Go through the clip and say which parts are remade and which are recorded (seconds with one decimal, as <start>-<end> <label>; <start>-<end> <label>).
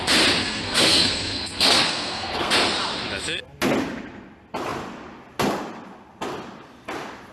0.0-0.4 recorded; 0.4-2.5 remade; 2.5-7.3 recorded